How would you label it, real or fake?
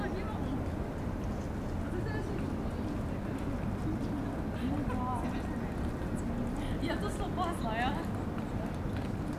real